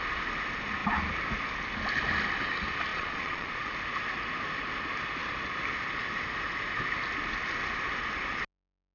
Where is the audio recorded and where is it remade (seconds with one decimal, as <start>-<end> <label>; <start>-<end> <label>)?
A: 0.0-2.9 recorded; 2.9-3.7 remade; 3.7-8.9 recorded